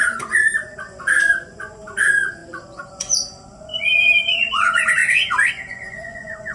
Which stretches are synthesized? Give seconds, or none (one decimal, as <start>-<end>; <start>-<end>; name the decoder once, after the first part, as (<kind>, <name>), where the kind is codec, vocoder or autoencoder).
0.0-5.0 (vocoder, Vocos); 5.5-6.5